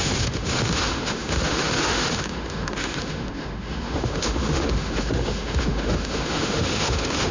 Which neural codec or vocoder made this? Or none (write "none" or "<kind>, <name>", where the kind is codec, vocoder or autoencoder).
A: autoencoder, DAC-VAE